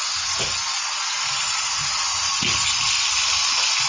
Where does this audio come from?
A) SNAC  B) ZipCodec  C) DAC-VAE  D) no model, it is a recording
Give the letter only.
D